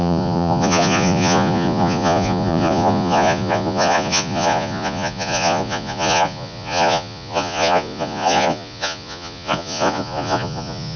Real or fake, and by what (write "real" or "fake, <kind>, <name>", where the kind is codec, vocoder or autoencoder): fake, vocoder, Vocos